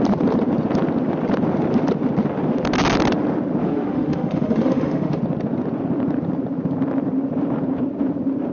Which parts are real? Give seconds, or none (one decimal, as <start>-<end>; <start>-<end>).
0.0-3.6; 5.2-8.5